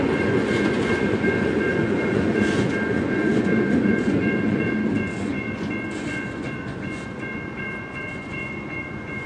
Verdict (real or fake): fake